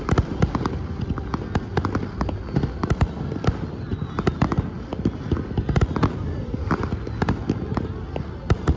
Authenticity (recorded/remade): recorded